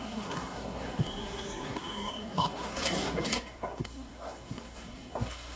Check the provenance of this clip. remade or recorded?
remade